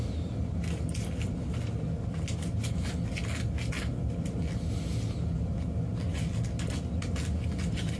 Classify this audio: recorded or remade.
recorded